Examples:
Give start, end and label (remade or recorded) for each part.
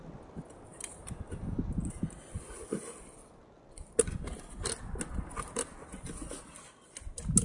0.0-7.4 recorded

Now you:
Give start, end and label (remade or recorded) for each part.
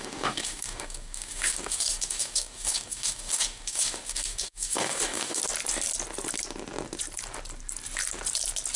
0.0-5.4 remade; 5.4-8.8 recorded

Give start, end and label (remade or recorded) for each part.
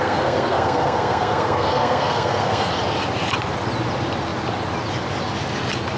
0.0-2.7 remade; 2.7-6.0 recorded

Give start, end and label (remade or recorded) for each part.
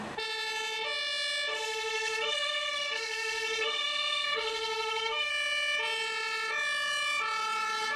0.0-1.5 recorded; 1.5-5.3 remade; 5.3-8.0 recorded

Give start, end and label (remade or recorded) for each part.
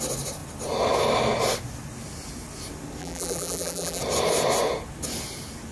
0.0-3.0 recorded; 3.0-4.0 remade; 4.0-5.7 recorded